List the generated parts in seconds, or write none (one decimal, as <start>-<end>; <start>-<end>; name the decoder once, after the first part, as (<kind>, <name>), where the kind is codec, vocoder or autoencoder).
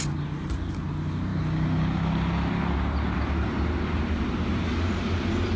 none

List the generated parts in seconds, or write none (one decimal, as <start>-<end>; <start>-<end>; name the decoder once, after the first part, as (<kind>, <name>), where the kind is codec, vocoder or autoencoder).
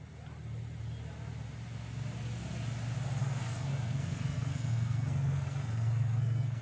3.2-6.6 (codec, SNAC)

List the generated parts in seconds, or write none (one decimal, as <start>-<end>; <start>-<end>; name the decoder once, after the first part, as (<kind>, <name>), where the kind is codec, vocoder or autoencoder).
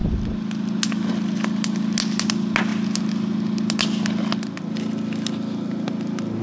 none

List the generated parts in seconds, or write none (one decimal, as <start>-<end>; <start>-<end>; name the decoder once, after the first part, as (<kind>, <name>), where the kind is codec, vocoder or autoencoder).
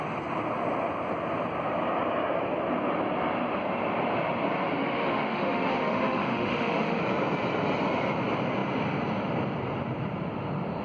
4.8-7.0 (autoencoder, DAC-VAE)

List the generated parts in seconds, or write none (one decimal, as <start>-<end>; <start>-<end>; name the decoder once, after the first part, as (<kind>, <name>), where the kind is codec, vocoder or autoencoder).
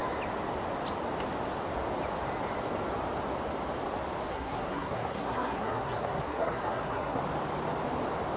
4.3-7.2 (codec, SNAC)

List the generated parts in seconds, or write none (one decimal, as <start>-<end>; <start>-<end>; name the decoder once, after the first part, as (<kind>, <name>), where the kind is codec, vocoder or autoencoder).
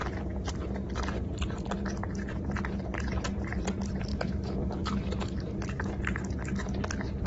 4.1-6.0 (autoencoder, DAC-VAE)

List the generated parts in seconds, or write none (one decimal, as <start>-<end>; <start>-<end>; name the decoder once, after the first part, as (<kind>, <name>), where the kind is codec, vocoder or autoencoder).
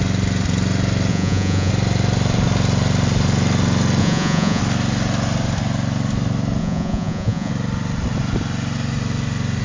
1.1-1.7 (vocoder, Vocos); 4.0-4.6; 6.6-7.5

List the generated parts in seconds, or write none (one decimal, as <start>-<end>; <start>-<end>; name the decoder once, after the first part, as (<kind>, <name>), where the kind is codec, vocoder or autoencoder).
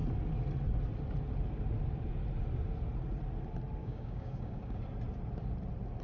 3.8-4.8 (codec, DAC)